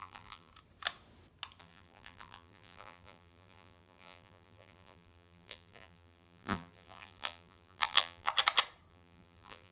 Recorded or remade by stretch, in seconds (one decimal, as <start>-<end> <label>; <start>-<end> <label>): 0.0-0.5 remade; 0.5-1.6 recorded; 1.6-8.3 remade; 8.3-8.9 recorded; 8.9-9.7 remade